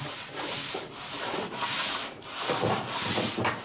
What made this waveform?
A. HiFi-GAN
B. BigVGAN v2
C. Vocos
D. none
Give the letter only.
D